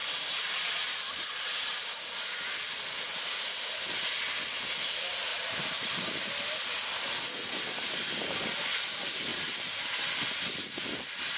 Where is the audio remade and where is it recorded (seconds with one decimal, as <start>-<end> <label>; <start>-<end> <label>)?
0.0-1.9 remade; 1.9-5.3 recorded; 5.3-6.1 remade; 6.1-9.3 recorded; 9.3-10.0 remade; 10.0-11.4 recorded